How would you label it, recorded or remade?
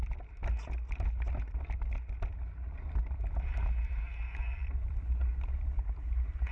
recorded